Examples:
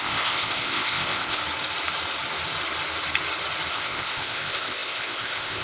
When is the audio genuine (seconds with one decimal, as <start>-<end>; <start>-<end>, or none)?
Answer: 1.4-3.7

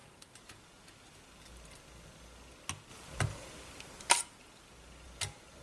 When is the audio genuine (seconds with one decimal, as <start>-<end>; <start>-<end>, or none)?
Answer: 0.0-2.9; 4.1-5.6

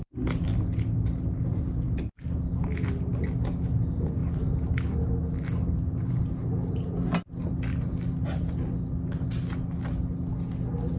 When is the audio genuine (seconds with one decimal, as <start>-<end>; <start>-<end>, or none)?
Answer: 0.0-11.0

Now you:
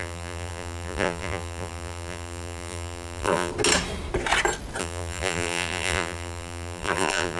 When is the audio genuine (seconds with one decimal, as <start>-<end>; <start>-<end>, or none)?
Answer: 3.5-4.8